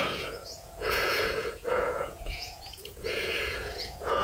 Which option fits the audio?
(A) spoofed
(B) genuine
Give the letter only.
A